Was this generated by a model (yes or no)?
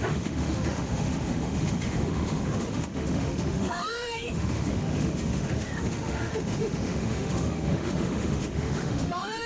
yes